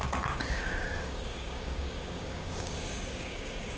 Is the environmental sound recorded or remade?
remade